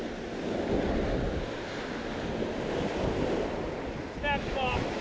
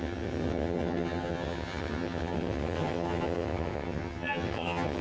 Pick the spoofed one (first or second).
second